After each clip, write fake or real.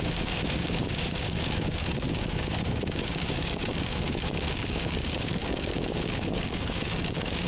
fake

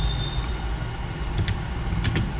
real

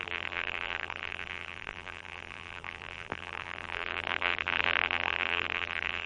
fake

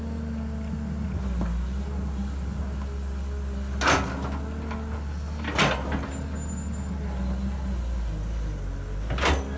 real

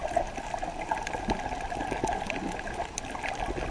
real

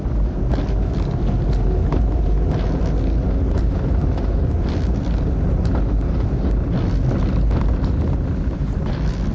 real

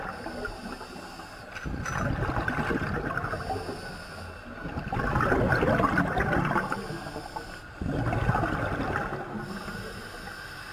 real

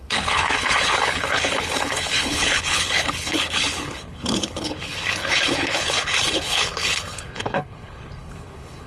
fake